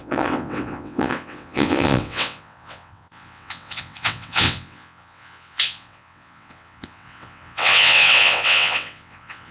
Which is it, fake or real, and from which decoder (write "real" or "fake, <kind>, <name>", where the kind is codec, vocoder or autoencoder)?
fake, vocoder, WaveNeXt